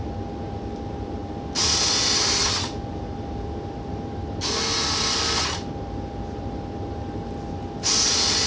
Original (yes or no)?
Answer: yes